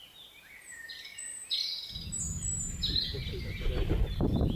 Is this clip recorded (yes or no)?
no